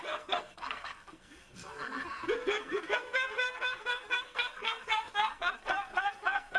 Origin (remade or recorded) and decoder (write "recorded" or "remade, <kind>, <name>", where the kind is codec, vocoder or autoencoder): remade, codec, SNAC